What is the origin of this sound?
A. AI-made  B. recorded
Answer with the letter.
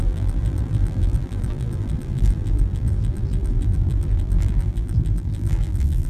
A